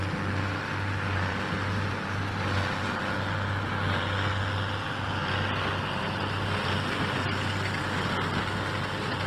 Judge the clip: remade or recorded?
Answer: recorded